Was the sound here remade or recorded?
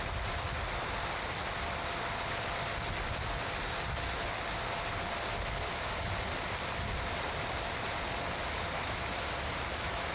recorded